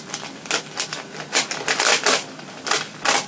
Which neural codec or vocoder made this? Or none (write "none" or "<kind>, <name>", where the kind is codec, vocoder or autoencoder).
none